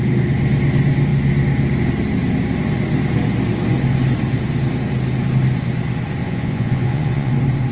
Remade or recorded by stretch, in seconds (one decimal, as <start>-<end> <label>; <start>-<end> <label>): 0.0-6.2 recorded; 6.2-7.3 remade; 7.3-7.7 recorded